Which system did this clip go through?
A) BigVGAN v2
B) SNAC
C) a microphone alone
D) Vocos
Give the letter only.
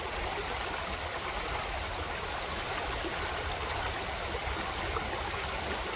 C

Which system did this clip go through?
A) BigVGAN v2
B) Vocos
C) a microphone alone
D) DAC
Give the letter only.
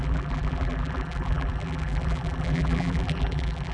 A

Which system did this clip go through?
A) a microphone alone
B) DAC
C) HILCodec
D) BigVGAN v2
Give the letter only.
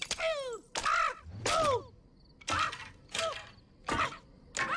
A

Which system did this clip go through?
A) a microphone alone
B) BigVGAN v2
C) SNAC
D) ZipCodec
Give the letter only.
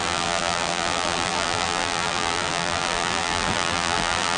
B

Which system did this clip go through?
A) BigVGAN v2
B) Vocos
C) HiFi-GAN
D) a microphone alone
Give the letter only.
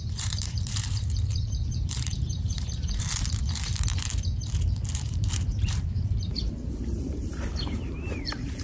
A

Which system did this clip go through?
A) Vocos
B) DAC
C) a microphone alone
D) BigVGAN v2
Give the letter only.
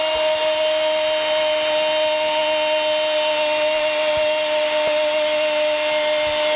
C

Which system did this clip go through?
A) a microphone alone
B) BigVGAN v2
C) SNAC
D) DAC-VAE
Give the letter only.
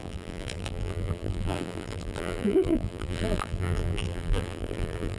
B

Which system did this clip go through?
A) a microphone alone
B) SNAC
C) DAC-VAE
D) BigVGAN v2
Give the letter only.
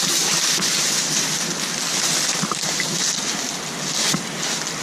A